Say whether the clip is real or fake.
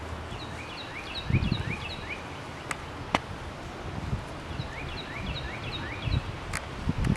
real